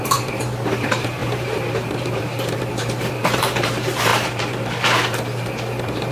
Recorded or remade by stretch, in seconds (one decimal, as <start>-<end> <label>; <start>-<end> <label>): 0.0-4.1 remade; 4.1-6.1 recorded